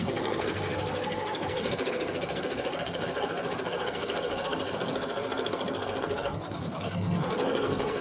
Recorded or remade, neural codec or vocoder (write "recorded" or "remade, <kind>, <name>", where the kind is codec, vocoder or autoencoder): remade, codec, SNAC